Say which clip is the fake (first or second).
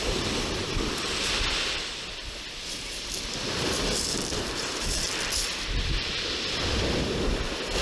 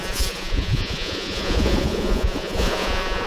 second